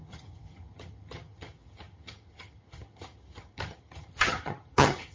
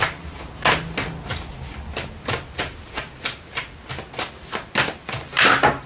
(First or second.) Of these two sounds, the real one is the second